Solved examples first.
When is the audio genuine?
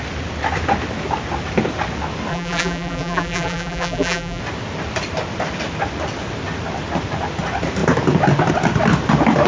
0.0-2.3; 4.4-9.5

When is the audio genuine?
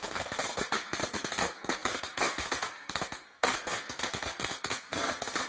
none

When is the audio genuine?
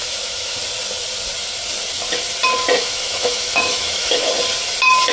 0.6-2.8; 4.3-5.1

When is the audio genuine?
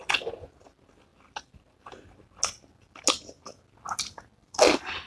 0.0-5.1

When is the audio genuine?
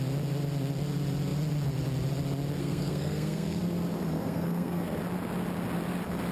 0.0-2.6; 3.6-4.1; 5.0-6.3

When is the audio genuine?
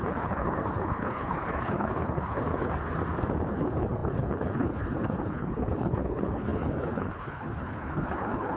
3.0-3.5